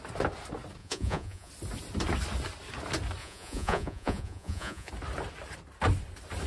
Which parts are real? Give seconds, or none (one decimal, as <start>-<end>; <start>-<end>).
0.0-0.8; 1.5-3.2; 4.9-6.5

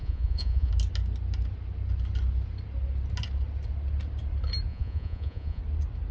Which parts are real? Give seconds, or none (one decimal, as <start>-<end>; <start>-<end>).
0.7-4.7; 5.6-6.1

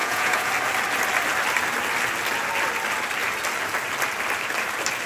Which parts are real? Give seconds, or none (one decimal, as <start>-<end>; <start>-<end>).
0.5-5.1

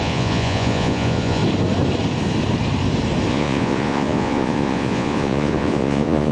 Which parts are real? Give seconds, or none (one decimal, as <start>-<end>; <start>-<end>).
1.4-3.3

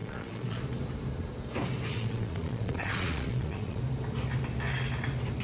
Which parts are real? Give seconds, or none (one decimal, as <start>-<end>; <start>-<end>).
0.6-1.9; 3.8-5.4

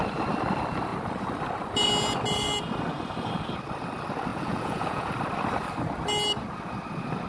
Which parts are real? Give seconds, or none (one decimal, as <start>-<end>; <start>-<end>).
0.0-4.3; 5.1-7.3